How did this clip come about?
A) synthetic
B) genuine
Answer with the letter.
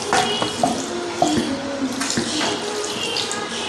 B